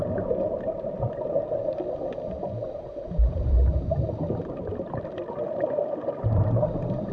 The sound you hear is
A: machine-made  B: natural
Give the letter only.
B